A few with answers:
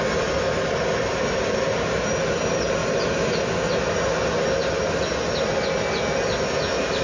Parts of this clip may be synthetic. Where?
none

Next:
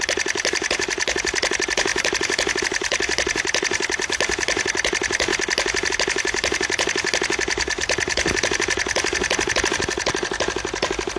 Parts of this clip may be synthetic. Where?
none

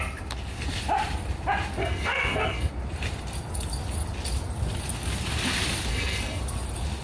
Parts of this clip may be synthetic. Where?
1.8-2.7 (codec, SNAC); 5.9-6.4

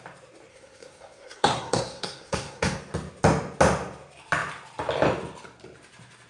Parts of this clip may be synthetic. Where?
0.5-2.8 (codec, SNAC)

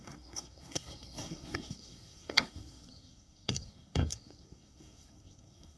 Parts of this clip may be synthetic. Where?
0.0-5.8 (codec, SNAC)

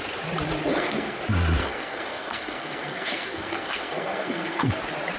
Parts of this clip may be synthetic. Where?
0.7-1.2 (codec, SNAC); 1.6-4.7

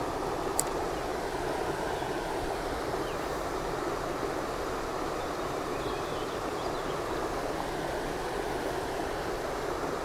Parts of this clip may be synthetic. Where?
none